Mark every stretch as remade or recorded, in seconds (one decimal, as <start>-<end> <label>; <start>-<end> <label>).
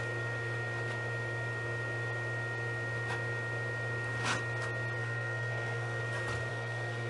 0.0-5.0 recorded; 5.0-6.0 remade; 6.0-6.5 recorded; 6.5-7.1 remade